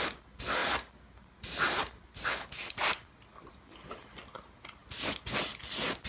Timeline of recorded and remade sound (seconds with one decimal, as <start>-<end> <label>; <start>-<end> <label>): 0.0-6.1 recorded